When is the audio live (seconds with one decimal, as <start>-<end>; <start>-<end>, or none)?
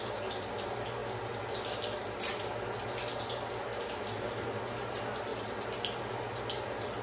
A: 0.0-7.0